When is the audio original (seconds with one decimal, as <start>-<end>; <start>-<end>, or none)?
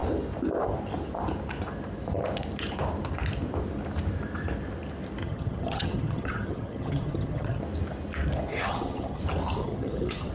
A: 0.0-5.2; 7.6-8.5; 9.2-9.6